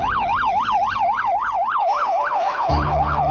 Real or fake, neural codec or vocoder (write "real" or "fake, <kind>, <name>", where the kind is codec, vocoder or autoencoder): fake, codec, HILCodec